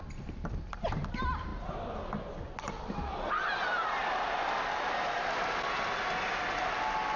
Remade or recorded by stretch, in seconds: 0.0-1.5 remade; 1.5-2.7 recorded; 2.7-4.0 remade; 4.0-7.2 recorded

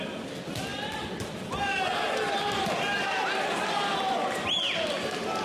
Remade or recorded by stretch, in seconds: 0.0-5.4 recorded

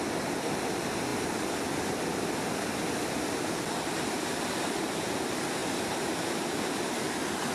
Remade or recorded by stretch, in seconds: 0.0-1.1 recorded; 1.1-3.6 remade; 3.6-5.6 recorded; 5.6-7.5 remade

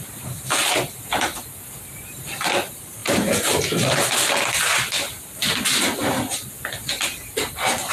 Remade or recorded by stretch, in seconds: 0.0-3.0 recorded; 3.0-4.6 remade; 4.6-7.9 recorded